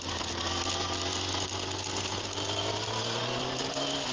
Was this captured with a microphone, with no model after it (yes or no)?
yes